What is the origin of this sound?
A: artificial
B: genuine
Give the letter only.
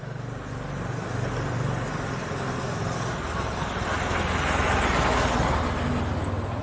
B